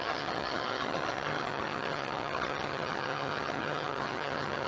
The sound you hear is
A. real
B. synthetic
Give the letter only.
B